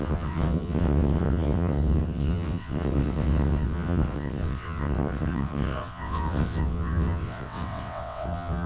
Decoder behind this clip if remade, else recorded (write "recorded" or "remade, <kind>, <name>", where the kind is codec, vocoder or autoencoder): remade, vocoder, WaveNeXt